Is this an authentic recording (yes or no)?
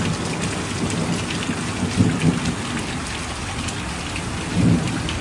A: yes